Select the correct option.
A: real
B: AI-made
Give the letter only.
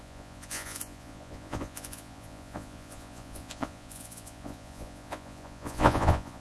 B